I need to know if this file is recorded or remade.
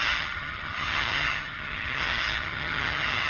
remade